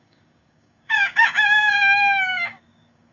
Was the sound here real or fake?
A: fake